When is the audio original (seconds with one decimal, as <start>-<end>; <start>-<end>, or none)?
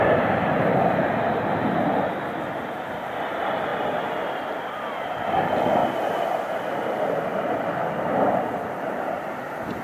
0.0-3.7; 4.4-7.3; 7.9-9.8